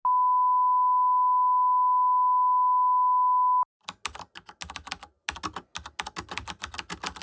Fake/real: real